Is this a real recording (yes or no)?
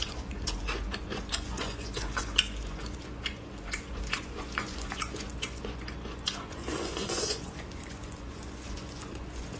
no